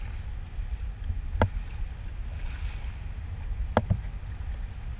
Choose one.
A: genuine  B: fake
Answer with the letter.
A